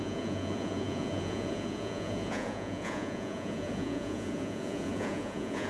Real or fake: fake